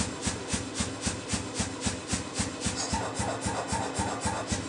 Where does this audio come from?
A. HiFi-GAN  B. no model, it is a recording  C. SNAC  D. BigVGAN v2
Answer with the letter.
B